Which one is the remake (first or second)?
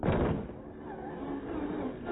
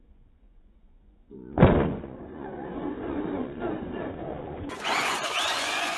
second